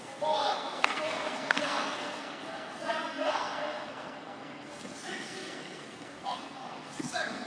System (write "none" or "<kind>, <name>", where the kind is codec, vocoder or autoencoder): codec, SNAC